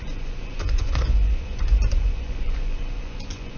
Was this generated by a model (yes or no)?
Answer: yes